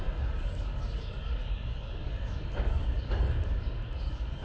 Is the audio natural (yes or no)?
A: no